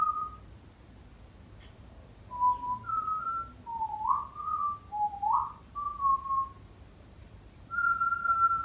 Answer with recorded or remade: recorded